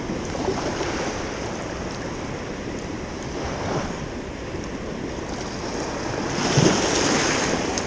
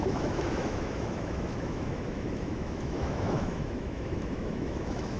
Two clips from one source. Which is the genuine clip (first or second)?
first